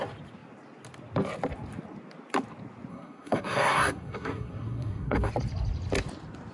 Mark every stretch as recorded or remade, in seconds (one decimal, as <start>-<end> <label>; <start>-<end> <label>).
0.0-2.9 recorded; 2.9-5.3 remade; 5.3-6.5 recorded